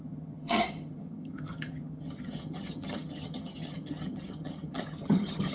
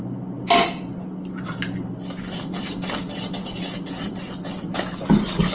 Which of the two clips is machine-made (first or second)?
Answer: first